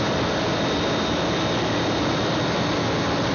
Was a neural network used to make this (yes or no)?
no